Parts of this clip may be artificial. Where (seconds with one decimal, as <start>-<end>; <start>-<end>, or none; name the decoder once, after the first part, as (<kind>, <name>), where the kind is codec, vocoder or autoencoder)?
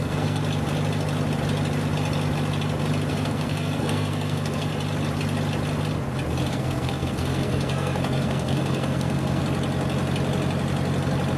0.0-0.4 (codec, SNAC); 3.1-4.7; 6.5-9.4